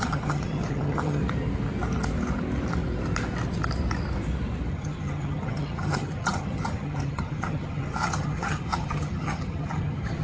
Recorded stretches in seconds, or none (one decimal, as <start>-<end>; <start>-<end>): 1.2-4.7